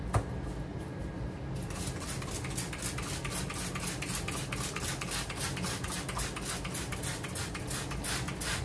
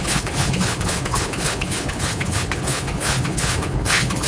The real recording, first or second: first